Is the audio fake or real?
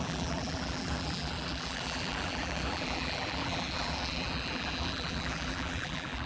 fake